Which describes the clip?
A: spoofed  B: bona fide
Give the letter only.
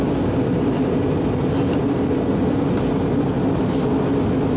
B